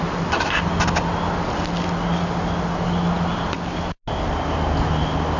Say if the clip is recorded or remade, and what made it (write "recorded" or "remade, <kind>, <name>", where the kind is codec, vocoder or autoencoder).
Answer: recorded